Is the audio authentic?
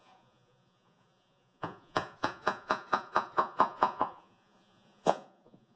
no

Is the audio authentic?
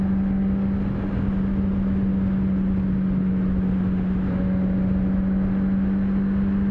yes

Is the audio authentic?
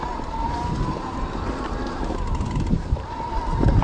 no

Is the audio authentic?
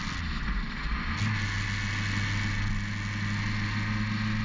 yes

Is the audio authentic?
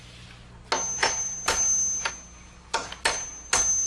yes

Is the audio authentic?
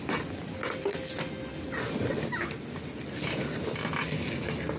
yes